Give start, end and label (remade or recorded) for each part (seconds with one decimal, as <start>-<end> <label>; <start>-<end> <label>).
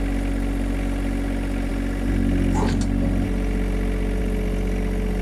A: 0.0-5.2 recorded